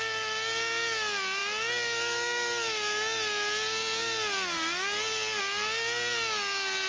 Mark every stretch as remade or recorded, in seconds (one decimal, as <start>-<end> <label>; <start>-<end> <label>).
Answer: 0.0-6.9 recorded